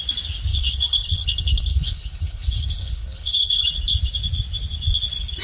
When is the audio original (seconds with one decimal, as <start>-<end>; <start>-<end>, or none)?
0.0-0.5; 3.7-5.4